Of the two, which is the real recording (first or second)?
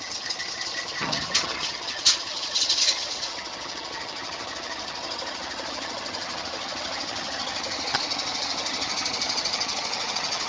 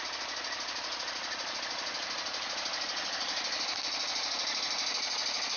second